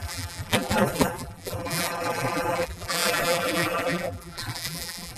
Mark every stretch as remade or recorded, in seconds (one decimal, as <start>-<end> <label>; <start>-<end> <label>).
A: 0.0-5.2 remade